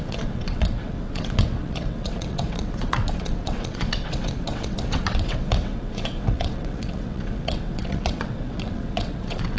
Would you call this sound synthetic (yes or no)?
yes